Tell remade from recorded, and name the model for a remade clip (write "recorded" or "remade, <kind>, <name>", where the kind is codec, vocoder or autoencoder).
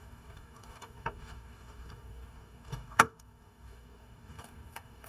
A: remade, codec, DAC